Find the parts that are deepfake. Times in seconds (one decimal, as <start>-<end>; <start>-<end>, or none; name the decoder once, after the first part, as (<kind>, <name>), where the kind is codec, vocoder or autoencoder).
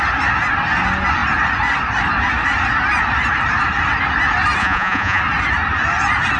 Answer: 4.6-5.2 (vocoder, Vocos)